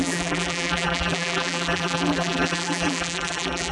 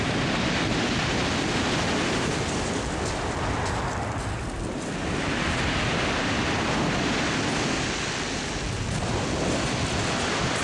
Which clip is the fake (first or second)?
first